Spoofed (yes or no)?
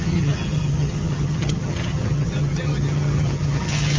yes